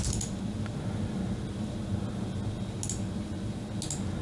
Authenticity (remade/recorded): recorded